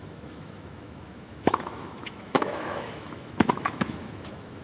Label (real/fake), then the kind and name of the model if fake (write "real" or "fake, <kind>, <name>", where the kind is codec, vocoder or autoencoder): fake, autoencoder, DAC-VAE